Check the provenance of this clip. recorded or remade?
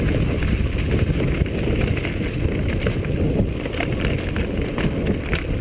recorded